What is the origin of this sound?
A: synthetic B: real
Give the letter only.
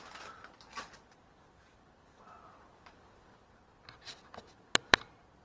A